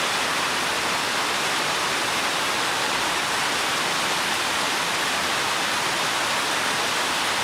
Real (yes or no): yes